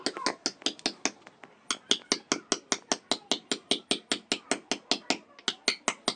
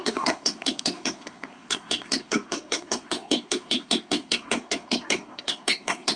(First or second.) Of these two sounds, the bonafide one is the first